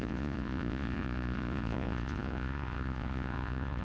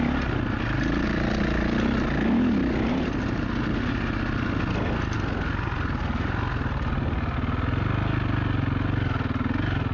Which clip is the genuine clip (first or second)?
second